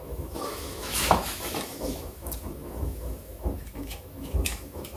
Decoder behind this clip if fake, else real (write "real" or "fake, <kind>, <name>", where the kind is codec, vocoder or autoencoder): fake, autoencoder, DAC-VAE